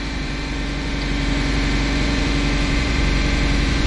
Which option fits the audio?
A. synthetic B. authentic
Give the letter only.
A